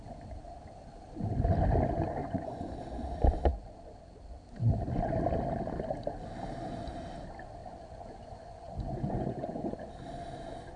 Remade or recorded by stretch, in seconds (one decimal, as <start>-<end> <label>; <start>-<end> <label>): 0.0-2.2 recorded; 2.2-2.8 remade; 2.8-7.6 recorded; 7.6-9.9 remade; 9.9-10.8 recorded